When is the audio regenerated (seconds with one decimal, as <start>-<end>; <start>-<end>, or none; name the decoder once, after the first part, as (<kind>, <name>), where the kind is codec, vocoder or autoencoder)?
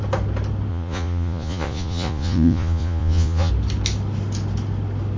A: 0.7-3.5 (vocoder, Vocos)